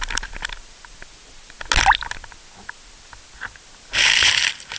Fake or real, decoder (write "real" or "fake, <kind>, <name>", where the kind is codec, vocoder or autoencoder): real